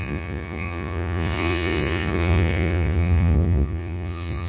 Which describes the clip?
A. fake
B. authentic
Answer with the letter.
A